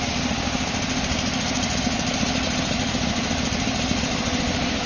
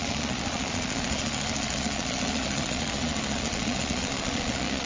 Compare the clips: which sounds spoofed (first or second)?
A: second